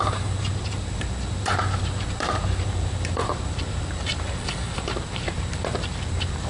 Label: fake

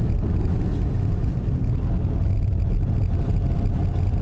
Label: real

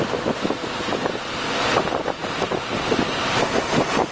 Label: real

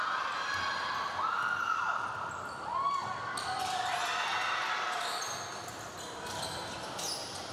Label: real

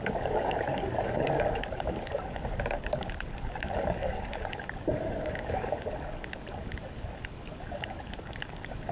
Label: fake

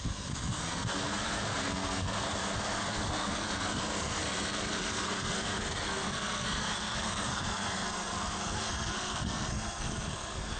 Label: fake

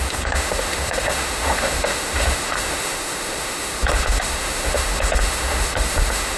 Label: fake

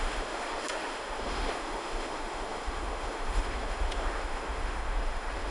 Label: fake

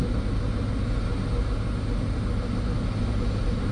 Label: real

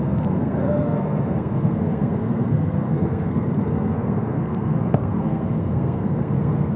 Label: fake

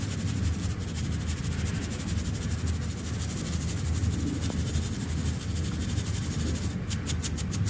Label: real